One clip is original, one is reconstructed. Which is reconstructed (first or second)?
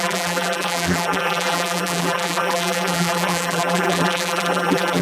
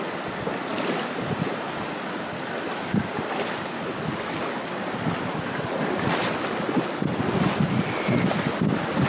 first